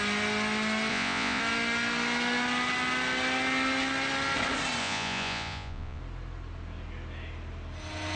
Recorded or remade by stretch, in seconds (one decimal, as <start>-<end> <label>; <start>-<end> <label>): 0.0-0.9 recorded; 0.9-1.4 remade; 1.4-4.8 recorded; 4.8-6.0 remade; 6.0-8.2 recorded